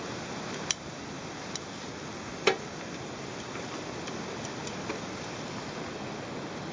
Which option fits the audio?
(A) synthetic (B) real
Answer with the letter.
B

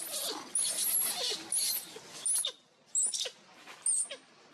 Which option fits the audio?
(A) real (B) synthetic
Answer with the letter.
A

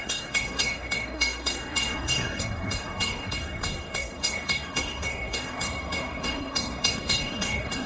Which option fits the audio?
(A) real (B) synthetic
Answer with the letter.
B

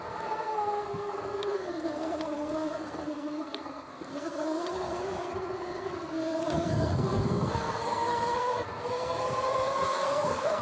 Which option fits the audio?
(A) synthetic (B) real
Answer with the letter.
A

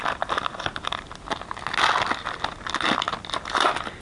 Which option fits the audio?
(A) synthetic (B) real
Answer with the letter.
B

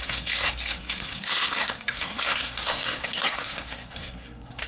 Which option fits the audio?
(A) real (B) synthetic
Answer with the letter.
B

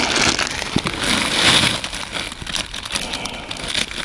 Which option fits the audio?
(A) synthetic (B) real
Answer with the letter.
B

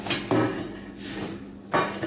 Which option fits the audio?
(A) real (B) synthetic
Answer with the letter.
A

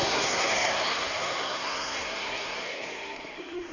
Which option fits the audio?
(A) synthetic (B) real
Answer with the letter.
A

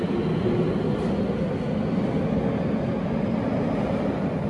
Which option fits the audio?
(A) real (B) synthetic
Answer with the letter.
A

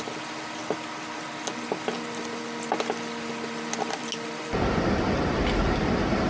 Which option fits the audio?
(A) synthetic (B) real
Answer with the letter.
B